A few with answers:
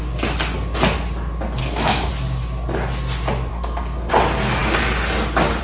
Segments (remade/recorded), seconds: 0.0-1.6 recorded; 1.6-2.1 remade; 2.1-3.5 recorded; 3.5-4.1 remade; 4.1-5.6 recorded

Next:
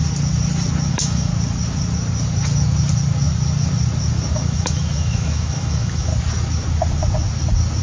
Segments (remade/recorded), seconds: 0.0-0.9 recorded; 0.9-1.3 remade; 1.3-4.3 recorded; 4.3-6.1 remade; 6.1-7.8 recorded